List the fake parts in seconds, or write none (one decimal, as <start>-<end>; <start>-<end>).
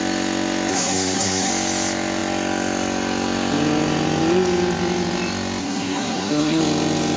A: 0.7-1.5; 5.6-6.6